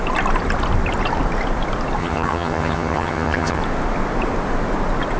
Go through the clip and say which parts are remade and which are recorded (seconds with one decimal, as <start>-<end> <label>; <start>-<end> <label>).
0.0-2.0 recorded; 2.0-3.6 remade; 3.6-5.2 recorded